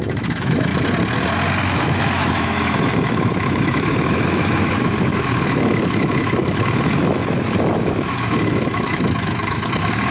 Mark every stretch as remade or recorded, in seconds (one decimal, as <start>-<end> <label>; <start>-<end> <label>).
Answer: 0.0-0.7 remade; 0.7-1.6 recorded; 1.6-10.1 remade